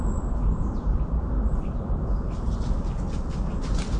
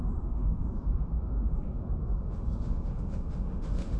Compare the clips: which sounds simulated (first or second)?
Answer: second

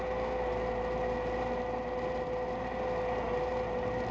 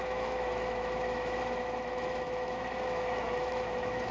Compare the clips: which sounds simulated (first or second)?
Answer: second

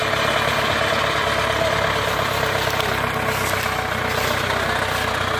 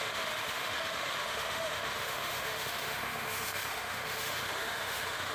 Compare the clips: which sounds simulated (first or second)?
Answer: second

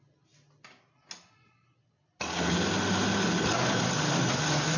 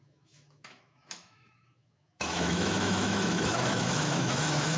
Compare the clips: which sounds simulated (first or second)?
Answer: second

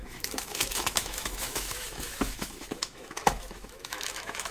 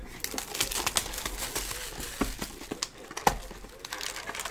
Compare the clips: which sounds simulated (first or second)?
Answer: first